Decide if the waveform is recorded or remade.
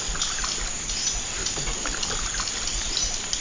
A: recorded